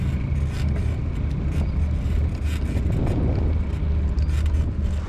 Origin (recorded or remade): recorded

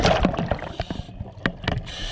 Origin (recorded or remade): recorded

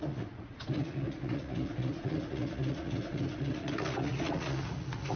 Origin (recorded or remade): remade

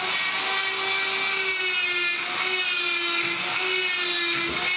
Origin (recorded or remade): recorded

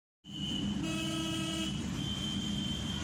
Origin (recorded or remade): recorded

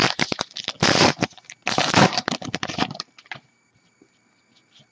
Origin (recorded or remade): remade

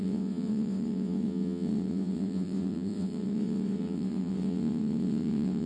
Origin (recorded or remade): remade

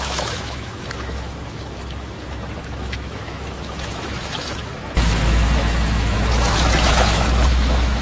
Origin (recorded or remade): remade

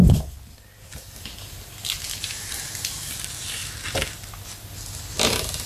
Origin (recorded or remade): recorded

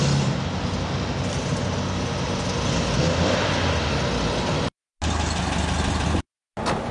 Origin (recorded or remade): recorded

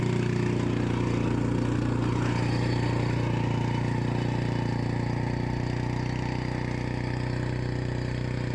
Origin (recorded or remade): recorded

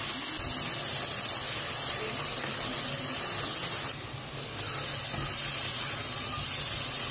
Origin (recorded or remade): recorded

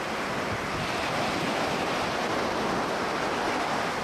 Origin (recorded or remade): recorded